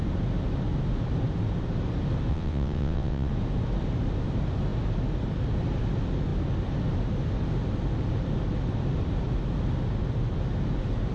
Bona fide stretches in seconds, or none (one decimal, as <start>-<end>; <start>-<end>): 0.0-2.3; 3.3-11.1